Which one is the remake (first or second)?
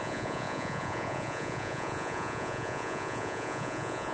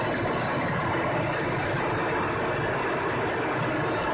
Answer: first